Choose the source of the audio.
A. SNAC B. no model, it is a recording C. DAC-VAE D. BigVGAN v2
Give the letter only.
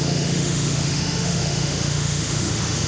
C